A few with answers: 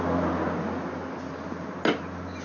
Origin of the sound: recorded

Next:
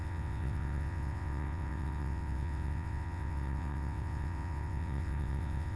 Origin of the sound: remade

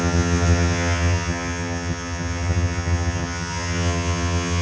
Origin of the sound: remade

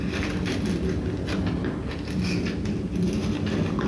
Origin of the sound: recorded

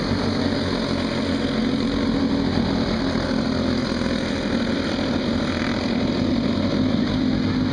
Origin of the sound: recorded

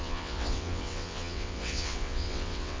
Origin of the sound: remade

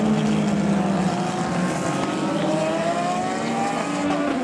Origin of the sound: recorded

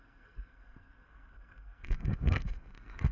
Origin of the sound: remade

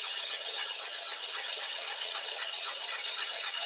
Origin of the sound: remade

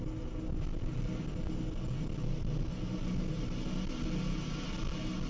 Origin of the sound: recorded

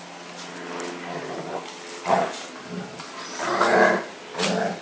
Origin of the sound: recorded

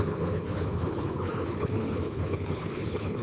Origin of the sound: remade